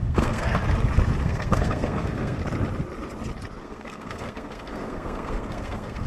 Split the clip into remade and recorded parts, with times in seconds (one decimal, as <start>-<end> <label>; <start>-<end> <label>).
0.0-0.6 remade; 0.6-1.2 recorded; 1.2-2.4 remade; 2.4-3.6 recorded; 3.6-6.1 remade